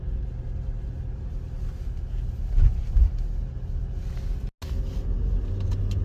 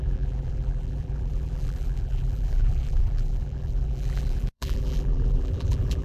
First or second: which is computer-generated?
second